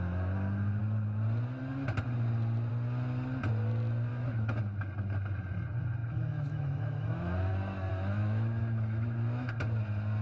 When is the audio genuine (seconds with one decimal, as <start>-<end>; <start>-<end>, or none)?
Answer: 0.0-4.1; 4.6-6.0; 7.5-7.9; 9.5-10.2